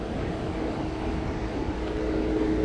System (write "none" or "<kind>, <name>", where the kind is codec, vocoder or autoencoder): codec, DAC